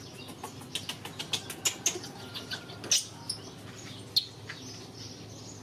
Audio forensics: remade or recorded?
recorded